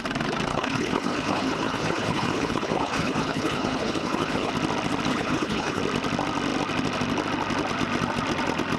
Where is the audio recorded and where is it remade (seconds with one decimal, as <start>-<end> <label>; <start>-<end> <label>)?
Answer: 0.0-0.5 recorded; 0.5-4.5 remade; 4.5-5.1 recorded; 5.1-5.8 remade; 5.8-8.8 recorded